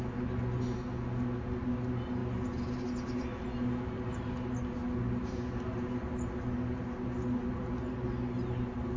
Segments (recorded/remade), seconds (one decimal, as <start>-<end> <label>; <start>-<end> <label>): 0.0-9.0 recorded

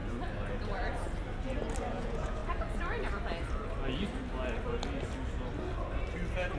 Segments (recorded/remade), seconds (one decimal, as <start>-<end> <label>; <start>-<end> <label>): 0.0-1.9 recorded; 1.9-2.4 remade; 2.4-6.6 recorded

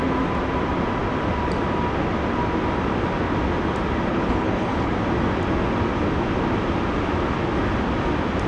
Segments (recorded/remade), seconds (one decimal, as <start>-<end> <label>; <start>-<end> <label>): 0.0-4.1 recorded; 4.1-4.9 remade; 4.9-8.5 recorded

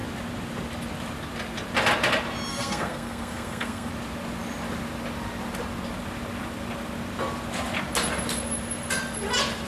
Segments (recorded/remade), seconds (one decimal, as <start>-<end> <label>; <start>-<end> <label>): 0.0-2.5 recorded; 2.5-3.9 remade; 3.9-9.7 recorded

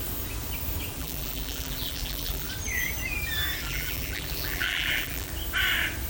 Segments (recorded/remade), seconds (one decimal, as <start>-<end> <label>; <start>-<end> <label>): 0.0-1.0 recorded; 1.0-2.5 remade; 2.5-3.6 recorded; 3.6-5.3 remade; 5.3-6.1 recorded

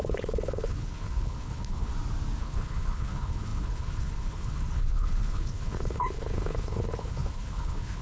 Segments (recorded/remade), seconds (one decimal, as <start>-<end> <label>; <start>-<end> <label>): 0.0-1.9 remade; 1.9-2.4 recorded; 2.4-8.0 remade